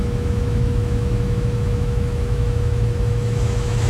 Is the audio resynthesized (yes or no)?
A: yes